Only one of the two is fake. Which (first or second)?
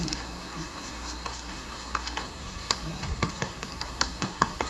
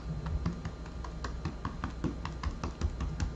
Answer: first